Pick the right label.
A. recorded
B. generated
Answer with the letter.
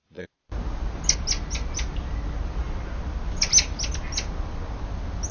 A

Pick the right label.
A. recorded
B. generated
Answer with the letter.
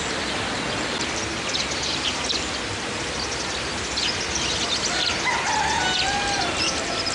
A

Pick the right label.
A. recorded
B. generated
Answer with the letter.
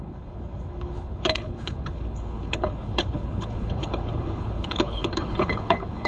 B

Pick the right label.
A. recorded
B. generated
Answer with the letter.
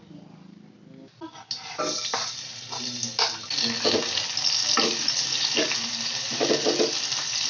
A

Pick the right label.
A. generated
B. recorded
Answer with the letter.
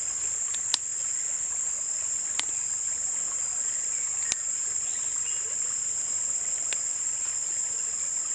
B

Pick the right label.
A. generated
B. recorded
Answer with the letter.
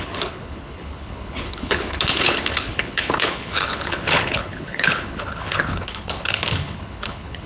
A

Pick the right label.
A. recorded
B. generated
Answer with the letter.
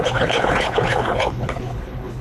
B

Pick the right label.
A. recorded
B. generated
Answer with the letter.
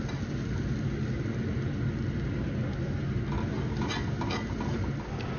A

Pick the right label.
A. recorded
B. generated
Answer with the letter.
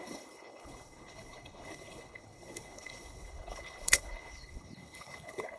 B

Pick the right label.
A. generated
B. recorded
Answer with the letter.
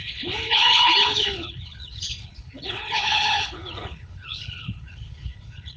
A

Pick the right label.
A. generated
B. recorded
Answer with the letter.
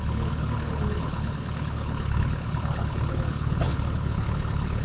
A